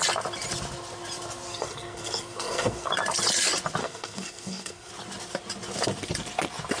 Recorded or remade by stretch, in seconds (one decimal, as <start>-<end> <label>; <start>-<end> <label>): 0.0-1.5 recorded; 1.5-2.9 remade; 2.9-3.8 recorded; 3.8-4.9 remade; 4.9-6.8 recorded